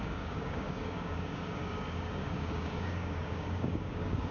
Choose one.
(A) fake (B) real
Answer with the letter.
A